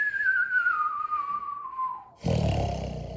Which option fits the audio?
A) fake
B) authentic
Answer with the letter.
A